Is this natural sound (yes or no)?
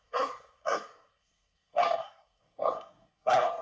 no